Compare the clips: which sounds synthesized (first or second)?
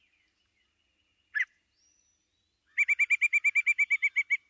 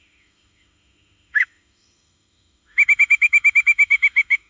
second